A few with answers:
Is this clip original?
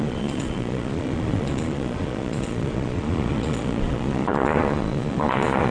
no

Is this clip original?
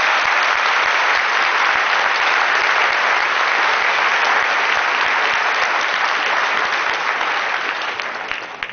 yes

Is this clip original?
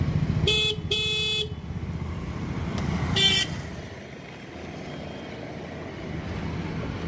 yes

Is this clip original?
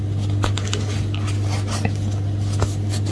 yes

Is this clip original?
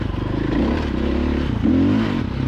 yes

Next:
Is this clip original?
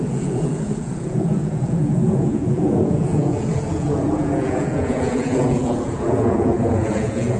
no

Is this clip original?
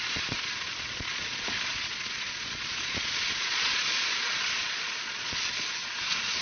no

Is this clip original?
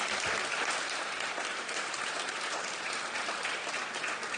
yes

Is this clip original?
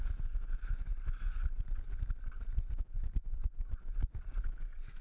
yes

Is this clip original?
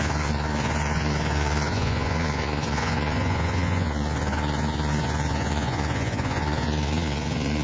no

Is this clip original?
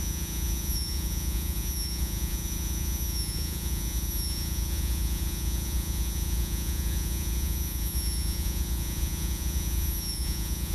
no